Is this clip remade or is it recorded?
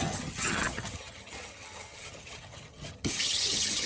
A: remade